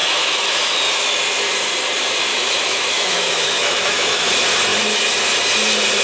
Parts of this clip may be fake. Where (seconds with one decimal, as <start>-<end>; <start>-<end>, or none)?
0.0-0.8; 2.3-4.3